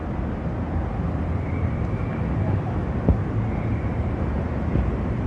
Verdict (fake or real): real